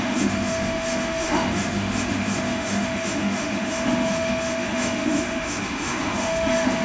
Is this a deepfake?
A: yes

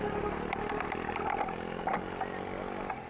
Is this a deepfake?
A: no